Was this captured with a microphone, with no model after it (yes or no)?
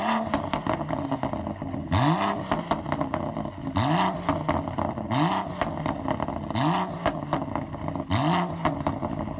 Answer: yes